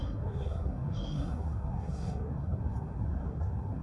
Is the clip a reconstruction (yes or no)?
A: yes